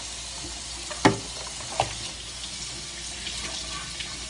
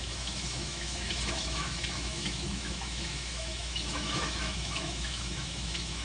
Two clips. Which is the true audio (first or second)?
first